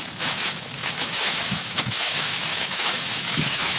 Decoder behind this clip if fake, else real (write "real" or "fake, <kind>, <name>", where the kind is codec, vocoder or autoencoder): fake, autoencoder, DAC-VAE